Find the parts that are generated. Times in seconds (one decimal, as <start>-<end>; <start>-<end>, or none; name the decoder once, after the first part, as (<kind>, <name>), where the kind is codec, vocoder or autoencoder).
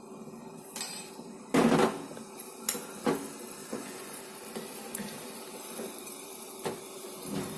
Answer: 3.6-4.2 (vocoder, Vocos)